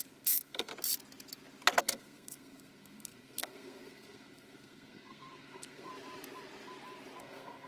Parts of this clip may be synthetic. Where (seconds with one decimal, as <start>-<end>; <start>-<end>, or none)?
0.0-0.7; 1.8-5.9; 7.2-7.7